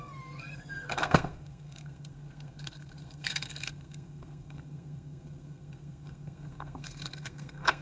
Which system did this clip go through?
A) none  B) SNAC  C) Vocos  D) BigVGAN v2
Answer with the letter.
B